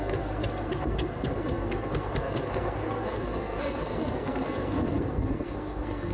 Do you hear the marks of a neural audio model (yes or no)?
yes